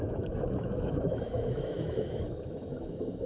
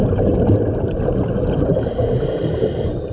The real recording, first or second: second